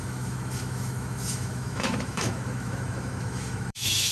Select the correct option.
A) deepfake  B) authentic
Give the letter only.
A